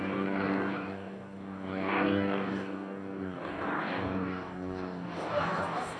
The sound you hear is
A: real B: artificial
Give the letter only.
B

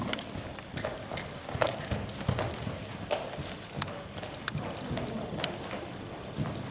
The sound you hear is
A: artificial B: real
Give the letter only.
B